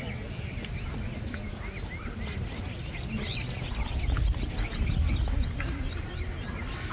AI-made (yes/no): no